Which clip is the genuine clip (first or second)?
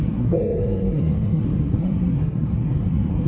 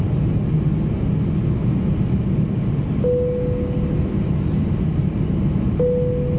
second